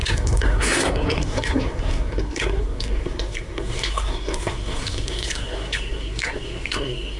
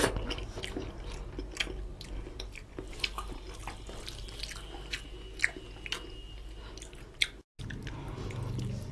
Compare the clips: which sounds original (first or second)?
second